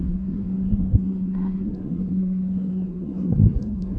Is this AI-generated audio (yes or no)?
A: yes